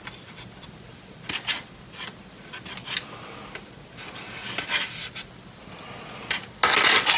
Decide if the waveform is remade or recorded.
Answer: recorded